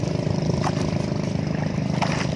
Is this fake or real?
fake